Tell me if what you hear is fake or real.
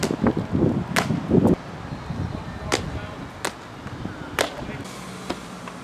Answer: real